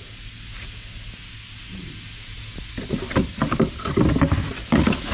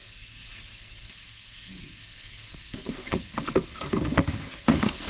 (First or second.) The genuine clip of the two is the first